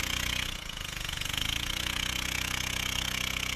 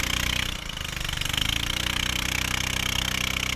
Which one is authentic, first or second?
second